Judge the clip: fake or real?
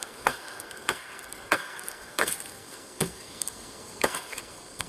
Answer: fake